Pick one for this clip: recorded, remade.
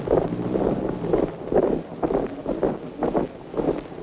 recorded